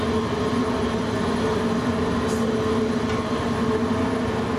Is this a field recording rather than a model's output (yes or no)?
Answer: yes